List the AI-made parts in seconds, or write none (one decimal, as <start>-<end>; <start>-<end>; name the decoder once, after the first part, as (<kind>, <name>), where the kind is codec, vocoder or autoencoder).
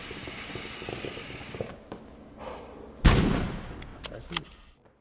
0.9-2.0 (codec, DAC)